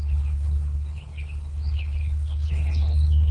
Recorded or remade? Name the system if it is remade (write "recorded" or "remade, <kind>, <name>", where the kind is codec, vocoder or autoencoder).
remade, codec, HILCodec